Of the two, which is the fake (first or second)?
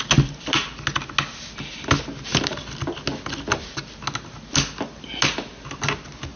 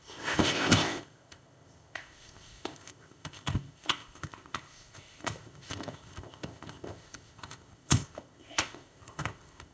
second